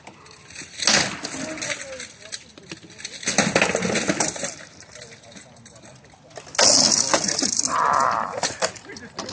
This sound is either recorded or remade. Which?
recorded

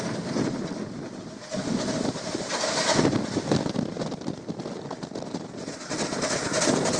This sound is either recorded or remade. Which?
recorded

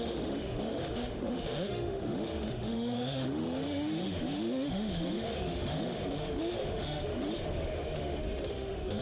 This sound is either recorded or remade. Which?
remade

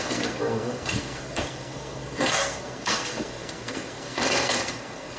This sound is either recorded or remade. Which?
remade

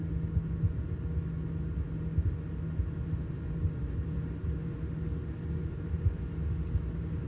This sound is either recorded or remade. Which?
recorded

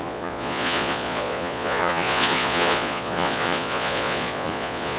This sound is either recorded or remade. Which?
remade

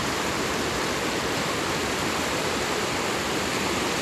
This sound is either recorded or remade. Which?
remade